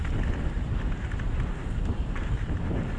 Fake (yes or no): no